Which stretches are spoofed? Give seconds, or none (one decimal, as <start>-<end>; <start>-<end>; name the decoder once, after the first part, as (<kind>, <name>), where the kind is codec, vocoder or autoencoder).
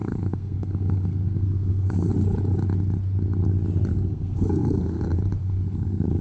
0.0-2.1 (codec, SNAC); 3.9-5.0; 5.4-6.2